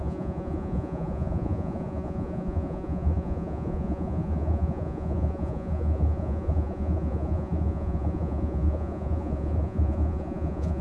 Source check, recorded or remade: remade